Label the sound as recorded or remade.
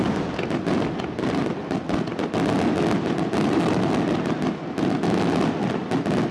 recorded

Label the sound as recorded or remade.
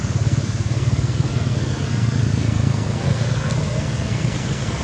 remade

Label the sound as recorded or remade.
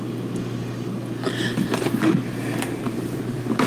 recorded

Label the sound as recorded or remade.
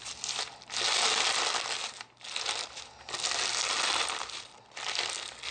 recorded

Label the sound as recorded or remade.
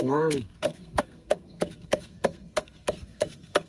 remade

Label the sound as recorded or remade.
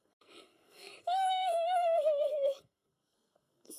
remade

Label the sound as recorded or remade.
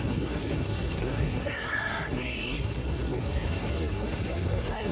remade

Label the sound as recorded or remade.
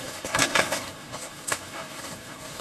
remade